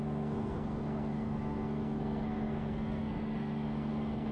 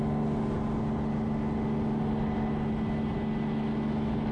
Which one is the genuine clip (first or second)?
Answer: second